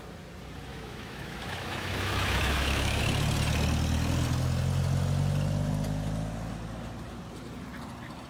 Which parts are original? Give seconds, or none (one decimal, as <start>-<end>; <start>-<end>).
0.0-0.7; 3.0-8.3